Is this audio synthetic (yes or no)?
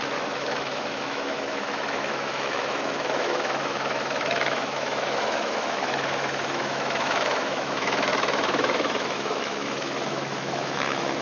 yes